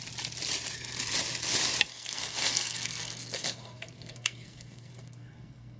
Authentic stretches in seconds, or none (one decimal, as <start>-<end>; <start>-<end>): 0.0-1.9